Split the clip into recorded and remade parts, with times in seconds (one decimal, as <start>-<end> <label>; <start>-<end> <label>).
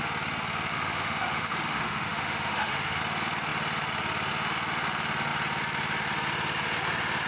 0.0-0.7 recorded; 0.7-3.0 remade; 3.0-7.3 recorded